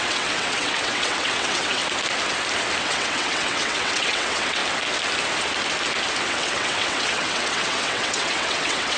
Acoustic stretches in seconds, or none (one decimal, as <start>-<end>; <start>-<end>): 1.8-2.8; 4.6-6.3